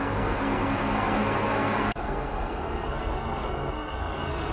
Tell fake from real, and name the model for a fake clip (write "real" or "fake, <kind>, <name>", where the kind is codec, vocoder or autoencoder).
fake, codec, SNAC